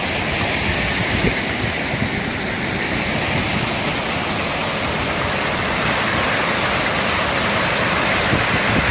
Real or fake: real